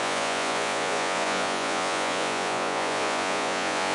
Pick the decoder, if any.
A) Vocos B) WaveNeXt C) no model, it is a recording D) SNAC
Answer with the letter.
A